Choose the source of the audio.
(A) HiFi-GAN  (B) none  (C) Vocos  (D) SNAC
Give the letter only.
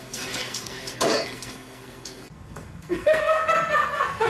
D